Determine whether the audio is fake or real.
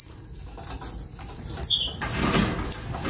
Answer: real